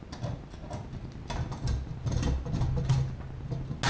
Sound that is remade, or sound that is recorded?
recorded